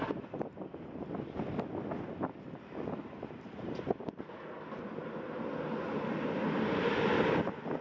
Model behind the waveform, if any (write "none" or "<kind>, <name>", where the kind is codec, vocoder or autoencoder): none